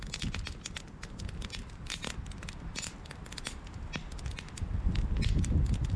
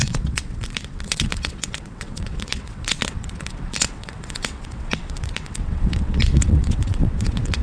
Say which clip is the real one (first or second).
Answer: first